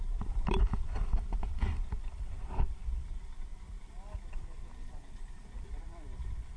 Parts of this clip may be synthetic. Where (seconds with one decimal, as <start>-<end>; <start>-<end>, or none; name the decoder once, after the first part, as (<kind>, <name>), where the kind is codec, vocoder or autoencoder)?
none